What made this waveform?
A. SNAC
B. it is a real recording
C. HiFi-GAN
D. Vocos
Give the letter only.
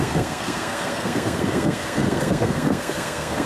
A